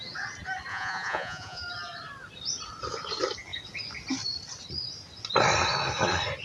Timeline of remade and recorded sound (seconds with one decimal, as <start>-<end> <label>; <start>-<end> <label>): 0.0-0.7 recorded; 0.7-1.6 remade; 1.6-6.4 recorded